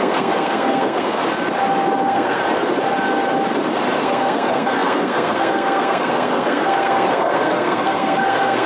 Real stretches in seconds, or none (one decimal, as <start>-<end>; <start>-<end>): 1.2-2.0; 2.4-4.0